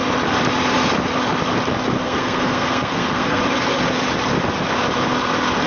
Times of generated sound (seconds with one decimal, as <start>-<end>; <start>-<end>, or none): 2.0-3.4

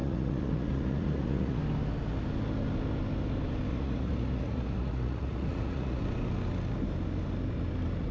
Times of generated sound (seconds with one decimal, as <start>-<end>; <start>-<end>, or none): 0.0-1.6; 3.7-6.0

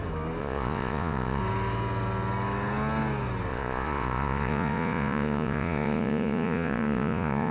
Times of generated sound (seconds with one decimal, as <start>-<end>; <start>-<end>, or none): 0.4-1.4; 3.5-7.5